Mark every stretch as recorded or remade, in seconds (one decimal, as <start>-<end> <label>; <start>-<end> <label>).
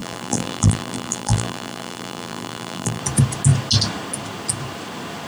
0.0-3.0 remade; 3.0-5.3 recorded